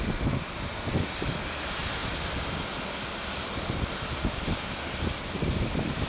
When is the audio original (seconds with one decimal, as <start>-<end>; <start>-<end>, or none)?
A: 0.0-2.0